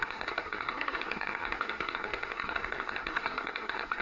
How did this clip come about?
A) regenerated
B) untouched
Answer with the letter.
A